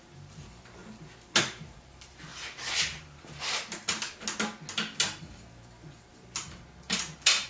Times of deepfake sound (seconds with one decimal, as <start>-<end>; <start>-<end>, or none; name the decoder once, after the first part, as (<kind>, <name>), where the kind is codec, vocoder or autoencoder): 0.0-0.8 (vocoder, BigVGAN v2); 1.4-3.8; 5.2-7.5